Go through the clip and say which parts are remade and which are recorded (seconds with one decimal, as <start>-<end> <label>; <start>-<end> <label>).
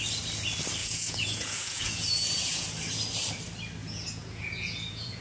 0.0-0.8 recorded; 0.8-2.7 remade; 2.7-3.8 recorded; 3.8-5.2 remade